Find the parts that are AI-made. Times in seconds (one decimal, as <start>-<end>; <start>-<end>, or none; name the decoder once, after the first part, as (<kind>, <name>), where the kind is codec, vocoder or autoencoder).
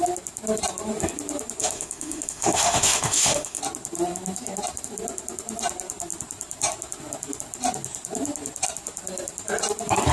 1.6-3.6 (autoencoder, DAC-VAE)